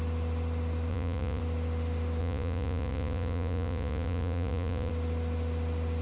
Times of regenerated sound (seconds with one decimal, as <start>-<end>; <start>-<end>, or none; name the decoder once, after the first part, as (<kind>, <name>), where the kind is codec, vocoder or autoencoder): 0.9-1.4 (vocoder, Vocos); 2.2-4.9